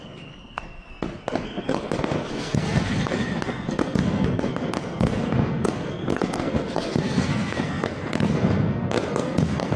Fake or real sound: fake